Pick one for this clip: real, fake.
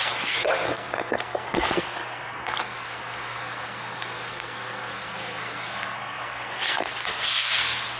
fake